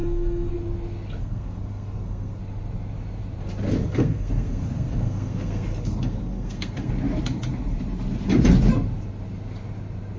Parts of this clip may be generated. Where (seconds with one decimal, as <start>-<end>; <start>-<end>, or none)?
0.0-0.5; 1.2-2.4; 3.8-6.9